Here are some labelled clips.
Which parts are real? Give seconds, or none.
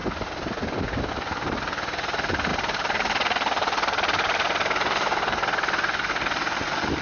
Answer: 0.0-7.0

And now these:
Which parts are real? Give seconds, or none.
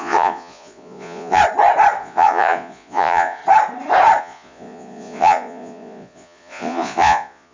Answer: 1.4-2.0; 3.4-4.2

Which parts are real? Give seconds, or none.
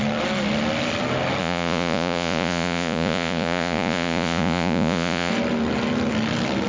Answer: 0.0-1.4; 5.3-6.7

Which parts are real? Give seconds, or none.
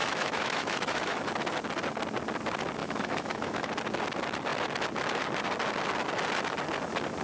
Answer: 1.3-2.8; 3.7-7.2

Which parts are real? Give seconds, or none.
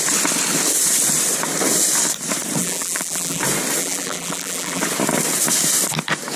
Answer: 0.0-2.6; 3.4-3.8; 4.8-6.4